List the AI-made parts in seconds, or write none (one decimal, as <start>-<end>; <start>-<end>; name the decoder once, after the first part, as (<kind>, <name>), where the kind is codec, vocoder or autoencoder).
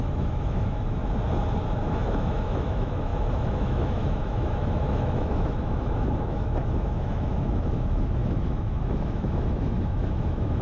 0.0-1.0 (autoencoder, DAC-VAE); 1.8-10.6